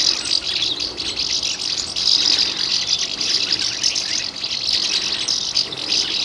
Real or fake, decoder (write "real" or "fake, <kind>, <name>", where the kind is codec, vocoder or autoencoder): real